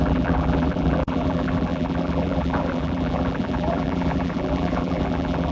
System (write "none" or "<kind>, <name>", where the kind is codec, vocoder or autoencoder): vocoder, BigVGAN v2